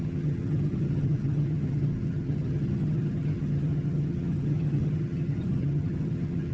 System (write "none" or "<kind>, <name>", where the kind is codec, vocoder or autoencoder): vocoder, HiFi-GAN